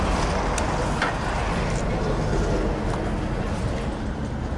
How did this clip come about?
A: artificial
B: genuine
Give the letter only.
B